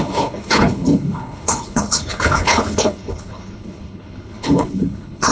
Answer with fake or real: fake